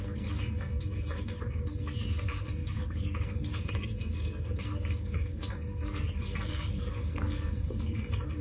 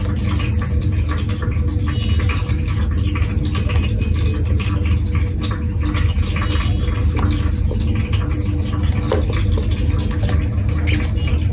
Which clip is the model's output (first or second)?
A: first